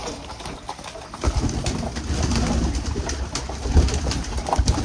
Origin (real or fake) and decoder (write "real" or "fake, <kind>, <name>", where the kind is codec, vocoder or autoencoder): real